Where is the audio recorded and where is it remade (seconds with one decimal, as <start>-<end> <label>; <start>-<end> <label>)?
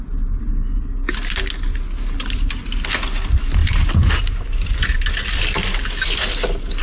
0.0-3.6 recorded; 3.6-4.5 remade; 4.5-5.8 recorded; 5.8-6.8 remade